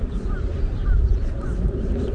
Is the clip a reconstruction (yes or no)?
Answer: no